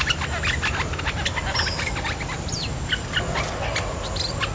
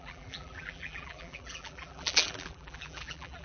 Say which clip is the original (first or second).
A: first